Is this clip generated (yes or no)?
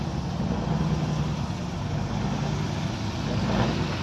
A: no